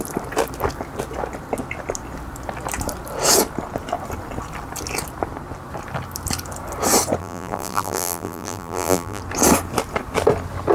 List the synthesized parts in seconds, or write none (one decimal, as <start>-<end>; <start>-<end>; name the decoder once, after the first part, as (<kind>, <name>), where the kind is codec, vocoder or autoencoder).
7.2-9.2 (vocoder, BigVGAN v2)